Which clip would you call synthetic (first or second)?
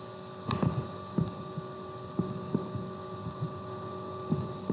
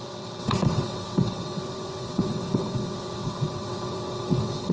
second